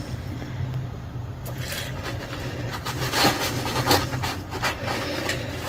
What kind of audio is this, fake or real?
real